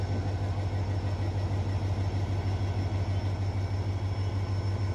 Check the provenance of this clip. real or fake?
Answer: real